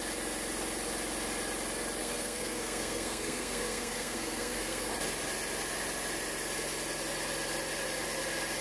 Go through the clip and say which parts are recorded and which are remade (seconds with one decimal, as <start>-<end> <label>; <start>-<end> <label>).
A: 0.0-2.0 recorded; 2.0-4.9 remade; 4.9-8.6 recorded